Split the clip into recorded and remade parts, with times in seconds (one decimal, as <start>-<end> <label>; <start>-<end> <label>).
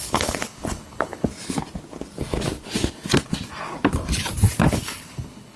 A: 0.0-1.3 remade; 1.3-4.7 recorded; 4.7-5.6 remade